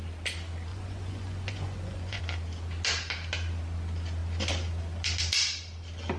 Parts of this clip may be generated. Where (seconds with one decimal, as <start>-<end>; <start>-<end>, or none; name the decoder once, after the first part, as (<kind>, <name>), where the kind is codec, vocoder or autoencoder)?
0.7-2.2 (vocoder, Vocos)